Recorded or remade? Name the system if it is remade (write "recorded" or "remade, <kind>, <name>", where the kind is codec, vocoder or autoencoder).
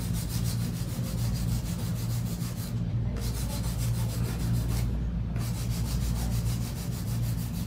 recorded